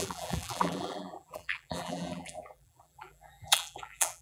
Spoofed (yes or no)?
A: yes